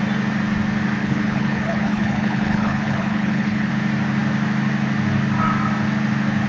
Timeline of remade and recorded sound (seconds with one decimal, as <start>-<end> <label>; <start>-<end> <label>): 0.0-1.0 recorded; 1.0-3.7 remade; 3.7-6.5 recorded